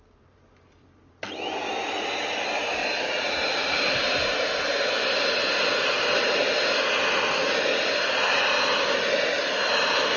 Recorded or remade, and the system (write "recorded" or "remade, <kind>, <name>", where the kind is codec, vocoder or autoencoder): recorded